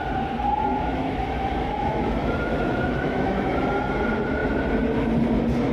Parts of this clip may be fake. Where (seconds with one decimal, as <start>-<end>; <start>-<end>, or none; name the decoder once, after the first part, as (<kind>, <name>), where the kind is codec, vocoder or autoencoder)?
0.7-3.6 (autoencoder, DAC-VAE)

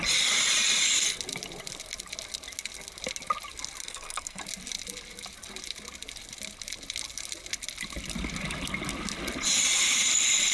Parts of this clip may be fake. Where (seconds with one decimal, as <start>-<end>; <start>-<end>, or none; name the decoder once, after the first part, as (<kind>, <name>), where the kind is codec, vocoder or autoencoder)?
3.8-4.4 (codec, SNAC)

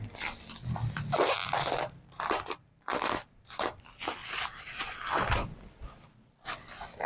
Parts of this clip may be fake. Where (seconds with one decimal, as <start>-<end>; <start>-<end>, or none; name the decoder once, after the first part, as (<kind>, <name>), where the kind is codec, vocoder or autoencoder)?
4.2-5.1 (vocoder, BigVGAN v2)

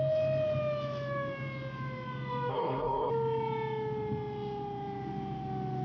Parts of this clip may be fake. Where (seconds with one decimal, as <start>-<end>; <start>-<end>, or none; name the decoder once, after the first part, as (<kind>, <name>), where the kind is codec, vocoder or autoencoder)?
2.5-3.1 (codec, SNAC)

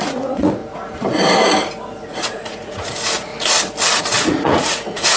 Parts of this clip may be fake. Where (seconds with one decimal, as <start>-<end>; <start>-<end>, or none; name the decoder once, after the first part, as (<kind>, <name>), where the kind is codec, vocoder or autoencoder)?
0.0-0.6 (vocoder, Vocos); 2.0-3.3; 4.0-5.2

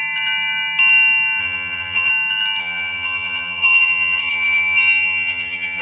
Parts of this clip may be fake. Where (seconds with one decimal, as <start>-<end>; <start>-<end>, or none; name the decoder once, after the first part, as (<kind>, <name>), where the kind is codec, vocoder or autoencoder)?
1.4-2.1 (vocoder, HiFi-GAN); 2.6-5.8

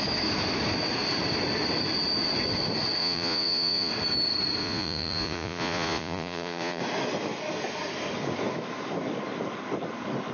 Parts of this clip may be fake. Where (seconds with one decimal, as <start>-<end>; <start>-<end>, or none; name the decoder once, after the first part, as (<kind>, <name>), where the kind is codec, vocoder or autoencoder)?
3.0-3.9 (vocoder, Vocos); 4.6-6.8

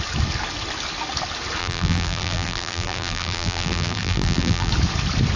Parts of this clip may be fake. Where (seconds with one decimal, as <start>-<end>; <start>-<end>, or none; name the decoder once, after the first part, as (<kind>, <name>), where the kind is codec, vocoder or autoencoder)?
1.6-4.7 (vocoder, BigVGAN v2)